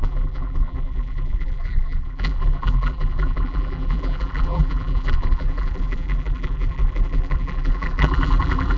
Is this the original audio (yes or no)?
no